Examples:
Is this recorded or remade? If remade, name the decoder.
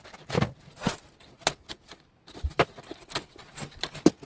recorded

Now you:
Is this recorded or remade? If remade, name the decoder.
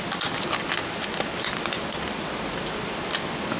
recorded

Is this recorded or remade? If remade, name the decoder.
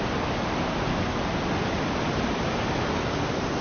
recorded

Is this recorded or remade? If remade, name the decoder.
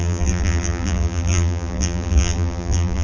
remade, vocoder, BigVGAN v2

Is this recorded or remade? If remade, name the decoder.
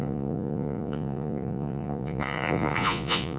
remade, vocoder, Vocos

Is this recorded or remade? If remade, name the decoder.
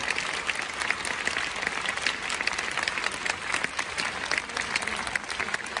recorded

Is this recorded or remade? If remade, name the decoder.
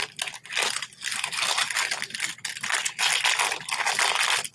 recorded